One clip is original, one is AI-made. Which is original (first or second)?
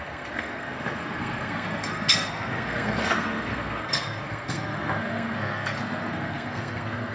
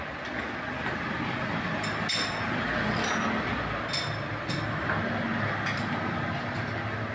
second